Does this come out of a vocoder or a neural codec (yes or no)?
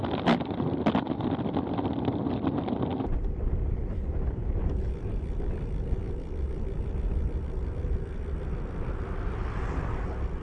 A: no